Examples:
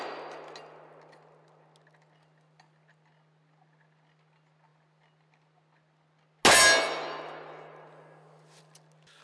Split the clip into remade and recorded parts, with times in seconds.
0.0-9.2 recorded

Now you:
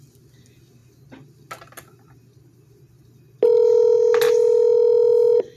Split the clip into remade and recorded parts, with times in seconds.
0.0-5.6 recorded